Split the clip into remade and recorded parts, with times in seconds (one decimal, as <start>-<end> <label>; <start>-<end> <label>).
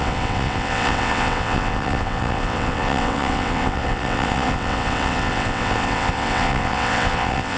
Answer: 0.0-7.6 remade